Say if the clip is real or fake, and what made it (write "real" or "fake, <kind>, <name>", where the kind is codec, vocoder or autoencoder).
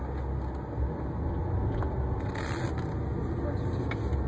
real